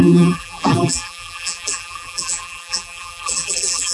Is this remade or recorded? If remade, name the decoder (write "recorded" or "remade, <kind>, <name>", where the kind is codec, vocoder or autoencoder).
remade, vocoder, BigVGAN v2